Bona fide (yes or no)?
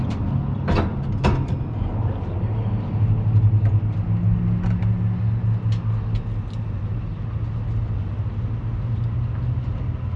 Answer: yes